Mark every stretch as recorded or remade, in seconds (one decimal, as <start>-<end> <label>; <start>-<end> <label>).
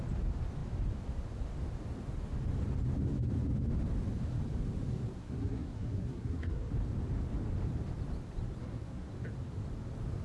0.0-5.1 recorded; 5.1-6.7 remade; 6.7-8.6 recorded; 8.6-9.1 remade; 9.1-10.2 recorded